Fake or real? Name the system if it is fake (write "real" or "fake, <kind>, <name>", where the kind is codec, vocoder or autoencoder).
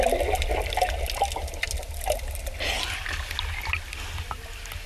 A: real